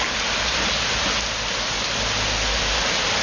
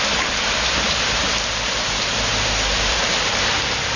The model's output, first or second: second